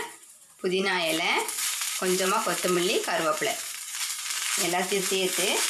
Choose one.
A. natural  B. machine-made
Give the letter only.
B